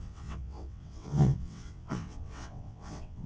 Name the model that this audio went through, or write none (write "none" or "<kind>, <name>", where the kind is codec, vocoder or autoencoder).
vocoder, WaveNeXt